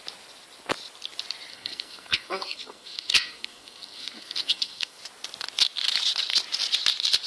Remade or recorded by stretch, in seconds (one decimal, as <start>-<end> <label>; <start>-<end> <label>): 0.0-1.5 recorded; 1.5-5.0 remade; 5.0-7.3 recorded